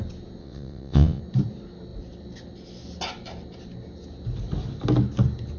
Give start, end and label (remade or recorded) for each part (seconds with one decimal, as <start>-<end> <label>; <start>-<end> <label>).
0.0-0.4 recorded; 0.4-1.2 remade; 1.2-5.6 recorded